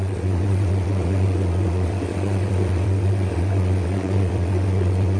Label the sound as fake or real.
fake